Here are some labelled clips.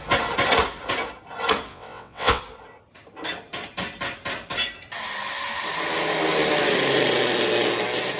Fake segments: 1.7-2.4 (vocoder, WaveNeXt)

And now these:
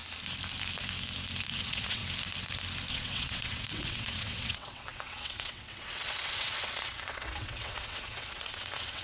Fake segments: 1.6-2.0 (vocoder, WaveNeXt); 2.9-9.0

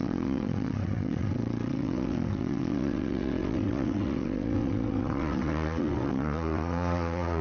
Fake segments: 0.0-7.4 (vocoder, WaveNeXt)